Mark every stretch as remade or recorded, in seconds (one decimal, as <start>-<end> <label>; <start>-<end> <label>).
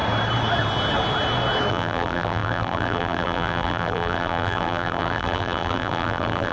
0.0-1.7 recorded; 1.7-6.5 remade